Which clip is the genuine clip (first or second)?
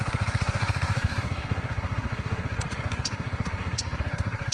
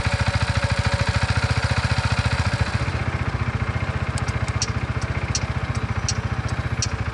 second